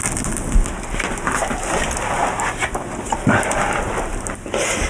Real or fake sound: real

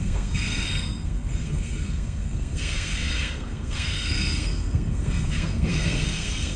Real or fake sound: fake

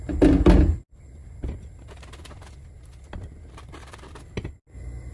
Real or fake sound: real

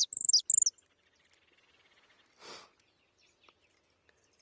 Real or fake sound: real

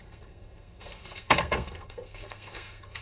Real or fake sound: fake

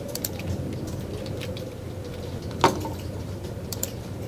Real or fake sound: fake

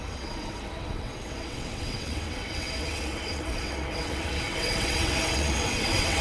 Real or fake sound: fake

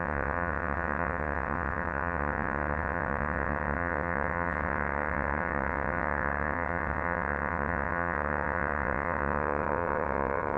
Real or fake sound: fake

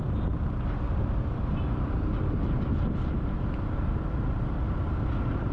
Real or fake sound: real